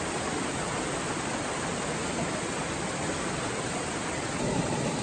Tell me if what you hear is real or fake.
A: real